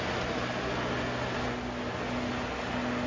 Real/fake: real